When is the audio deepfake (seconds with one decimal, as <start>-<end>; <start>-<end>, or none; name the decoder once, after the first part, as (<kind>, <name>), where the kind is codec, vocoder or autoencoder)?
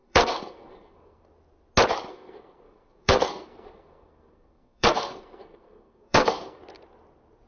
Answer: 0.0-1.2 (codec, SNAC); 2.1-6.6